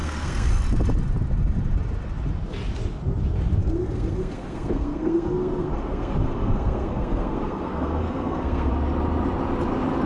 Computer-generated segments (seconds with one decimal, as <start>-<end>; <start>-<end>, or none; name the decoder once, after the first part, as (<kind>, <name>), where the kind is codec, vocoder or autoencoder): 0.0-0.5 (codec, SNAC); 3.6-8.7